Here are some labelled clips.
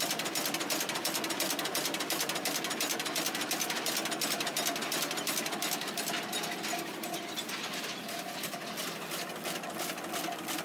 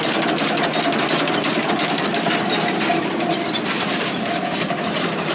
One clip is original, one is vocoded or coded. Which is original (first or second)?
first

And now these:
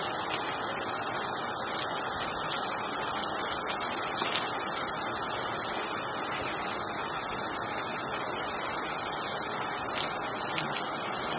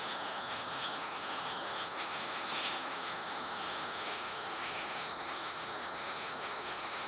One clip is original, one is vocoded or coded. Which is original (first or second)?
first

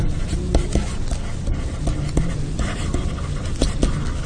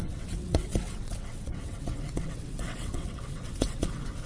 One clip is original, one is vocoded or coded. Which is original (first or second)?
first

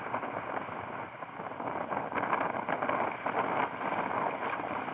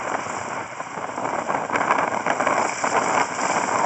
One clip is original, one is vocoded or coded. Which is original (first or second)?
first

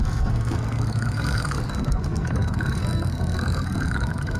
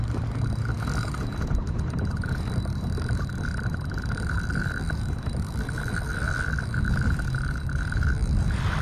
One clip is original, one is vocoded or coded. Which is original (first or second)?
second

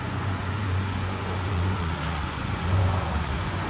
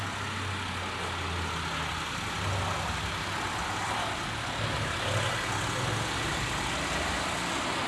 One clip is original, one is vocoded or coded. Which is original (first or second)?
second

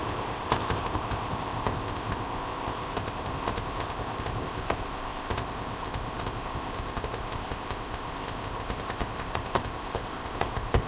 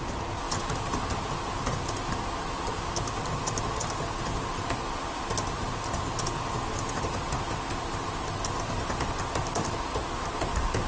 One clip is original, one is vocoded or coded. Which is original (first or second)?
second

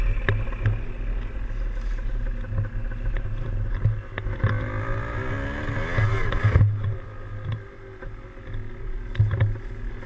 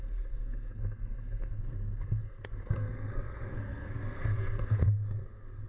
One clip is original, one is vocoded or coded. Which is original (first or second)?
first